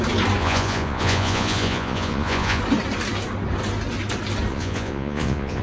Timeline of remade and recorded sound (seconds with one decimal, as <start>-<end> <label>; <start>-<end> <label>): 0.0-0.4 recorded; 0.4-2.6 remade; 2.6-4.5 recorded; 4.5-5.6 remade